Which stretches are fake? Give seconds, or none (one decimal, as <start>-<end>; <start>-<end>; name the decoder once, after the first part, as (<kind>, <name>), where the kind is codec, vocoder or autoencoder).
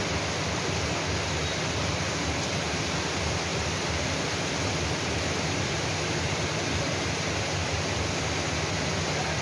3.5-6.4 (vocoder, BigVGAN v2)